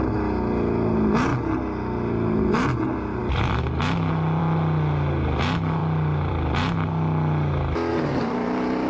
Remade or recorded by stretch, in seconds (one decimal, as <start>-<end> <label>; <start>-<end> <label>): 0.0-7.9 recorded; 7.9-8.9 remade

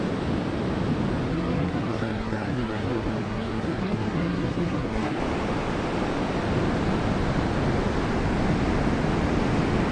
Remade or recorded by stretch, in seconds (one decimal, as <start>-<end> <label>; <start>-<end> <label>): 0.0-1.3 recorded; 1.3-5.2 remade; 5.2-9.9 recorded